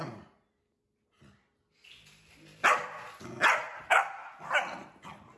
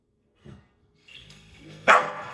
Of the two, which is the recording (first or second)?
first